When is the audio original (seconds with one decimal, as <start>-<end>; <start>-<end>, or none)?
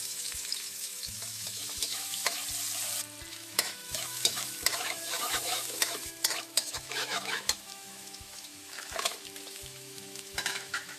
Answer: 2.4-3.3